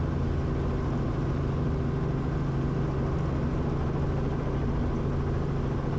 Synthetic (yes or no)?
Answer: no